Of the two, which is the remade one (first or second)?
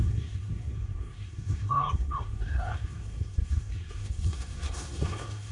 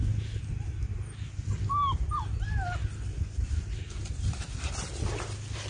first